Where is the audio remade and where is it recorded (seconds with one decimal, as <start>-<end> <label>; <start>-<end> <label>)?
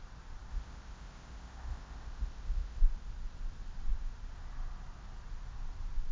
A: 0.0-0.5 recorded; 0.5-2.8 remade; 2.8-6.1 recorded